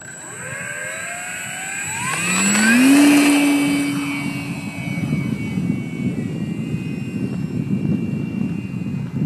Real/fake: real